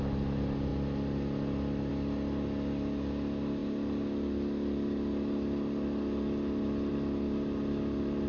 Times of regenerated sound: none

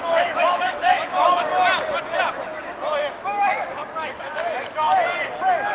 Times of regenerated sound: 0.0-1.5 (autoencoder, DAC-VAE); 3.1-4.4

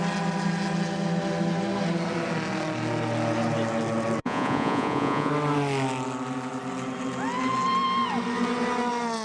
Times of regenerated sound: 4.2-5.3 (vocoder, Vocos)

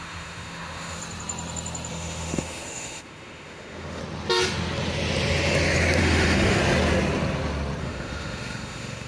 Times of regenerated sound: 0.0-1.0 (autoencoder, DAC-VAE); 1.9-4.0; 6.0-6.6; 7.8-9.1

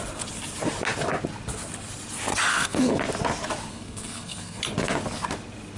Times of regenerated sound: 2.5-3.0 (codec, SNAC); 3.7-4.6

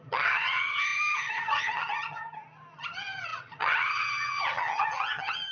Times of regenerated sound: 0.0-5.5 (vocoder, HiFi-GAN)